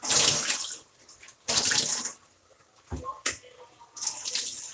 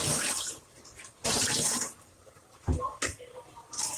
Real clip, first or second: first